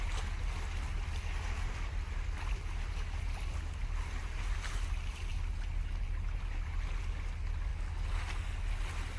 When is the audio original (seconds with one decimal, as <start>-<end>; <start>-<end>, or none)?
0.0-0.9; 2.5-9.2